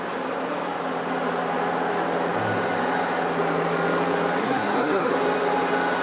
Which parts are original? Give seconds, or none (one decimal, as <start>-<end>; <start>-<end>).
0.0-4.4; 5.1-6.0